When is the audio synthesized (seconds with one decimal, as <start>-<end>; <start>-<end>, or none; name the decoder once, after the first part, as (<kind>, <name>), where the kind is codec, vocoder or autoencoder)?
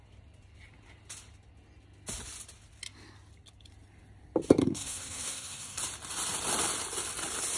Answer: 4.6-5.8 (codec, SNAC)